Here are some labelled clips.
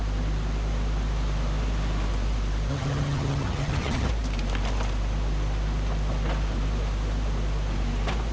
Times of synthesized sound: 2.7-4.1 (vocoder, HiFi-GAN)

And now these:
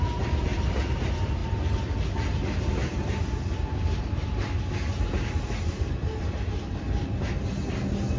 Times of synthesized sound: none